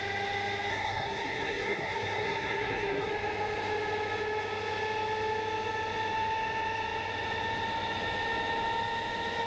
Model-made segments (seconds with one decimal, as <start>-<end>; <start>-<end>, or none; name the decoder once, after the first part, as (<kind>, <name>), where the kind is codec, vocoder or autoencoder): 0.7-3.1 (codec, SNAC)